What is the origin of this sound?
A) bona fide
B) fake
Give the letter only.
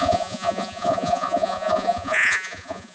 B